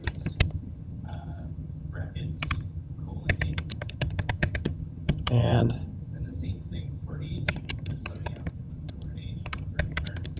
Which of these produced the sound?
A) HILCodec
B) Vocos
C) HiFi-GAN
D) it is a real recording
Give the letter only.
C